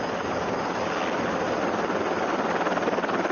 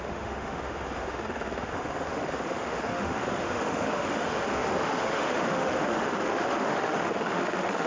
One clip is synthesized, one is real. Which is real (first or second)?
first